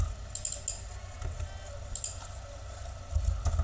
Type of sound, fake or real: real